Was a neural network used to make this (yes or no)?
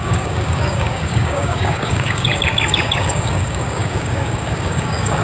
yes